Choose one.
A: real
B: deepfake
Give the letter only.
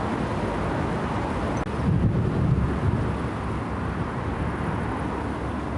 A